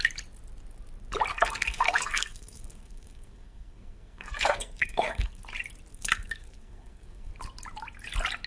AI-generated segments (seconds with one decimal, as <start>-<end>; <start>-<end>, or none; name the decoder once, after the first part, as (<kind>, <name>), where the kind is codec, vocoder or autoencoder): 1.3-5.4 (codec, SNAC); 5.9-7.3